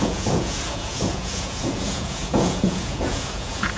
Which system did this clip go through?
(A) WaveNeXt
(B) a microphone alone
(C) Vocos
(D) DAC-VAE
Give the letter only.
C